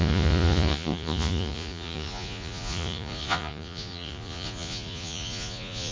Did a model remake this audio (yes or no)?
yes